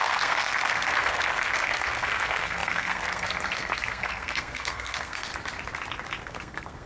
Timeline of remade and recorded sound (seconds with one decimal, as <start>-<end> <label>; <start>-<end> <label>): 0.0-5.3 remade; 5.3-6.2 recorded; 6.2-6.9 remade